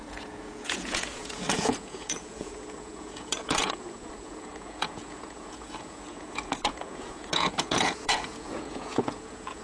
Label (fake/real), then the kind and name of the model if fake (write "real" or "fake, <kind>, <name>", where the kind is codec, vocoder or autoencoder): fake, vocoder, Vocos